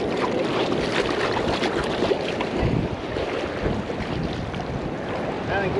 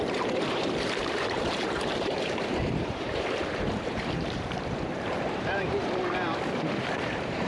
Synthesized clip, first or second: second